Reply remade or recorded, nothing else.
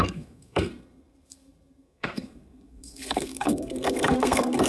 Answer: remade